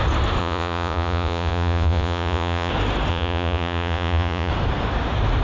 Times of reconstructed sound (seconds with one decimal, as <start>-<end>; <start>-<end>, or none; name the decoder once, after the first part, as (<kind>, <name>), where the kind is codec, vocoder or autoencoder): 0.4-2.7 (vocoder, Vocos); 3.1-4.5